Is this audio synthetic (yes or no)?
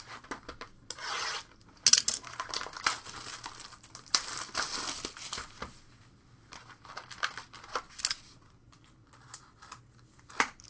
no